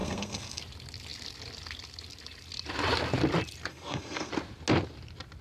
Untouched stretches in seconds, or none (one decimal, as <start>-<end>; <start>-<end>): 0.6-3.7; 4.3-5.4